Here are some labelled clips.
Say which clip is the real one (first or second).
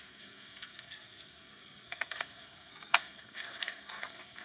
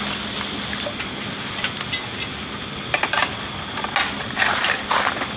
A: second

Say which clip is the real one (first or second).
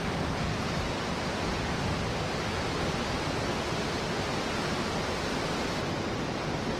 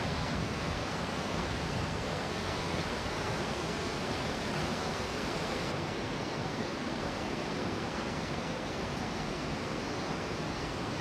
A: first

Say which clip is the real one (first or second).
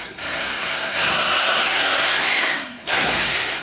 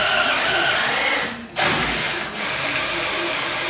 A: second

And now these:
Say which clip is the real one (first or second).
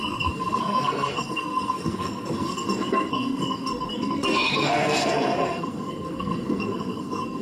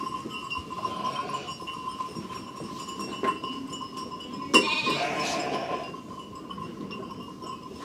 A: second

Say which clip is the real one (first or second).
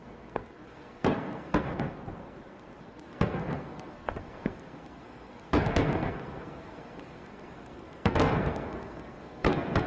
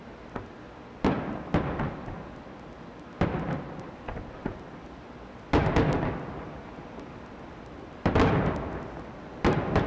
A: second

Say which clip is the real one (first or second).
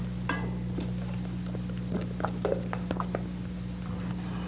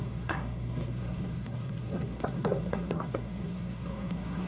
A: first